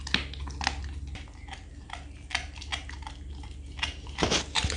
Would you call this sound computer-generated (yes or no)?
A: no